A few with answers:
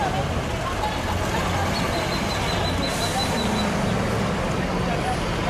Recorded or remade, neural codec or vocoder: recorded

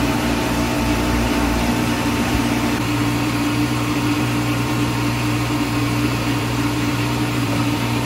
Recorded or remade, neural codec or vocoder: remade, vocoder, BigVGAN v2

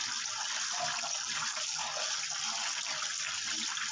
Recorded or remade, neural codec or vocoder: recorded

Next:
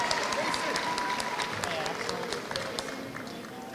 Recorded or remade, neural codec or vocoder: recorded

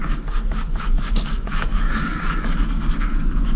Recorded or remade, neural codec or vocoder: remade, codec, DAC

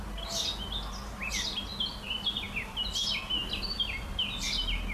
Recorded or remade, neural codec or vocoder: recorded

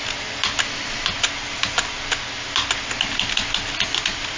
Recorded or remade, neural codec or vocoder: recorded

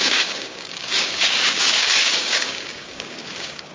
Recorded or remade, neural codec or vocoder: remade, codec, DAC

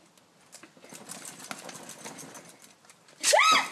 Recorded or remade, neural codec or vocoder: recorded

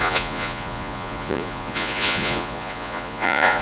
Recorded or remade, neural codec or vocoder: remade, vocoder, Vocos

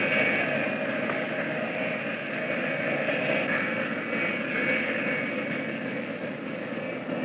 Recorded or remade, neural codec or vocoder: recorded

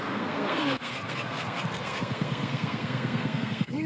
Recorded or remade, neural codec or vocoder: remade, codec, SNAC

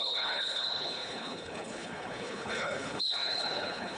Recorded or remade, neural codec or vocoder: remade, codec, HILCodec